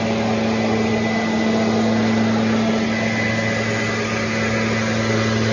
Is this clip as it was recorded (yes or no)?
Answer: yes